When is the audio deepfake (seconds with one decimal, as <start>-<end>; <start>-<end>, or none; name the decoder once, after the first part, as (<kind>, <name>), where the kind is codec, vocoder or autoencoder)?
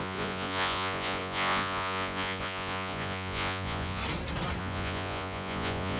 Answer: 0.0-4.0 (vocoder, Vocos); 4.6-6.0